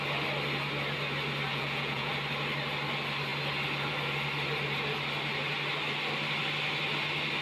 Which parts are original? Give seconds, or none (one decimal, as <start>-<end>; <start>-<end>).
0.0-1.5; 2.1-7.4